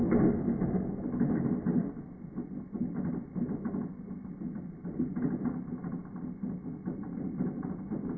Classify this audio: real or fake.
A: real